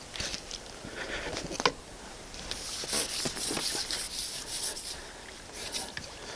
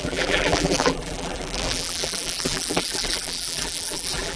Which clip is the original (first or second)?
first